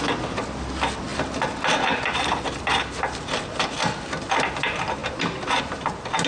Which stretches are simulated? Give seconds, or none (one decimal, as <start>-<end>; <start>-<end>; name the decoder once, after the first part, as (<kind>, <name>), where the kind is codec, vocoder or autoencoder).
none